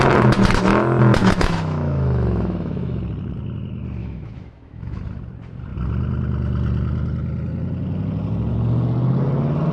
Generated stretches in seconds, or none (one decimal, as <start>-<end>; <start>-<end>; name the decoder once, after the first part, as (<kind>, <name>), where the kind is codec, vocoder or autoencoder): 1.2-3.0 (autoencoder, DAC-VAE); 4.0-5.0